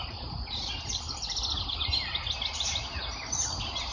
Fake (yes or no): no